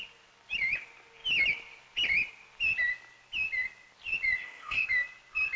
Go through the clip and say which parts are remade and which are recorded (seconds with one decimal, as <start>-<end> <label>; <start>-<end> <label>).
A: 0.0-4.4 recorded; 4.4-4.9 remade; 4.9-5.6 recorded